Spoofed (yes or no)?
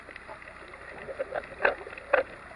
no